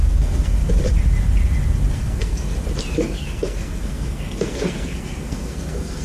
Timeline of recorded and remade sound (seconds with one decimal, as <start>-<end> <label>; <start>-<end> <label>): 0.0-0.6 remade; 0.6-1.9 recorded; 1.9-2.5 remade; 2.5-3.0 recorded; 3.0-6.0 remade